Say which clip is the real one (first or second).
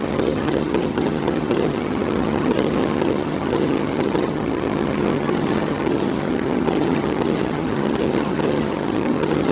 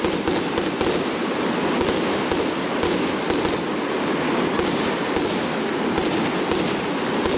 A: second